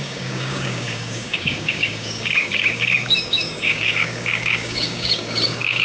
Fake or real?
fake